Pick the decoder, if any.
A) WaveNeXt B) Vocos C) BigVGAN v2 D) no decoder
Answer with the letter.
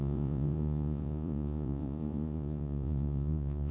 B